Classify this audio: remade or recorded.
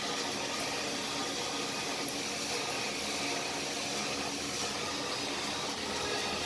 recorded